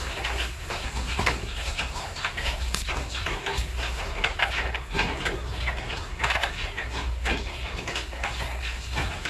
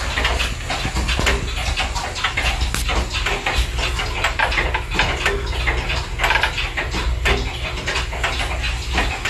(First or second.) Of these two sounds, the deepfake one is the first